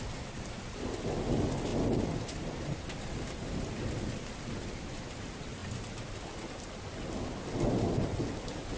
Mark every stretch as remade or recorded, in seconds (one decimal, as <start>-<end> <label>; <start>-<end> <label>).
0.0-8.8 recorded